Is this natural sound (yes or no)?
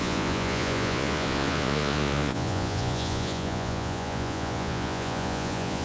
no